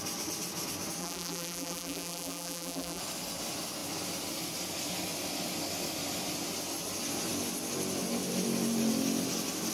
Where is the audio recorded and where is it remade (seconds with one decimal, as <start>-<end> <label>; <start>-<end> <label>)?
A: 0.0-1.0 recorded; 1.0-3.0 remade; 3.0-9.7 recorded